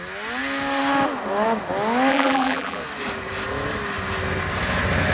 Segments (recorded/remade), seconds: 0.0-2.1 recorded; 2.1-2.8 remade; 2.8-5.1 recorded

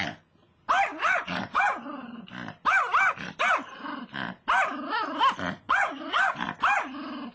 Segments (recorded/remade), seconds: 0.0-0.9 recorded; 0.9-1.9 remade; 1.9-5.6 recorded; 5.6-6.4 remade; 6.4-7.3 recorded

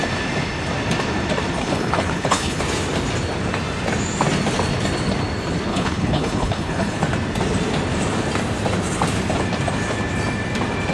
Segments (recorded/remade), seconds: 0.0-1.6 recorded; 1.6-2.6 remade; 2.6-5.7 recorded; 5.7-7.0 remade; 7.0-10.9 recorded

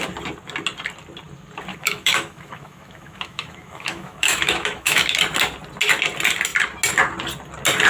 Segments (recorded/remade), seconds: 0.0-1.7 recorded; 1.7-5.0 remade; 5.0-7.9 recorded

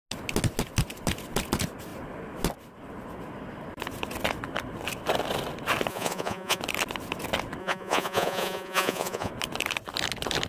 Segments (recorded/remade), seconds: 0.0-5.9 recorded; 5.9-6.6 remade; 6.6-7.6 recorded; 7.6-9.3 remade; 9.3-10.5 recorded